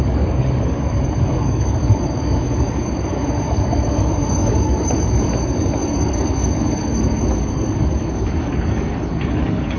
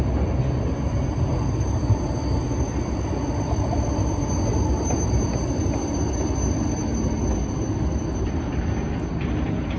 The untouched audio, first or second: second